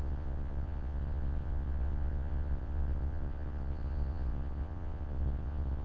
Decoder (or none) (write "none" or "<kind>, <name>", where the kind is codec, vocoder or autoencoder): vocoder, Vocos